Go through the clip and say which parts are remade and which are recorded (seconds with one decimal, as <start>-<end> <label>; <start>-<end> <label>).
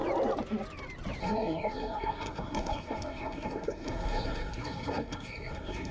0.0-1.2 recorded; 1.2-5.9 remade